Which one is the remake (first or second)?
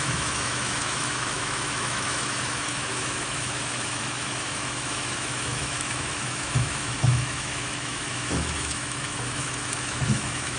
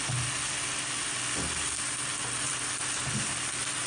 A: first